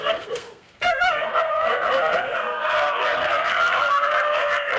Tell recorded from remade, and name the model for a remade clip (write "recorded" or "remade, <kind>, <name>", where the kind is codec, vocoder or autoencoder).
remade, codec, SNAC